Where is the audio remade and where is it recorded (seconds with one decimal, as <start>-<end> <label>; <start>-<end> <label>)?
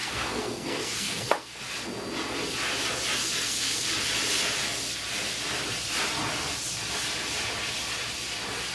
0.0-1.6 remade; 1.6-3.2 recorded; 3.2-3.9 remade; 3.9-8.7 recorded